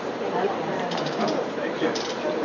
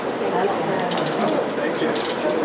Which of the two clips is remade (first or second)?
first